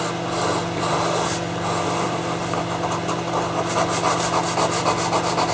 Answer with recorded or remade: recorded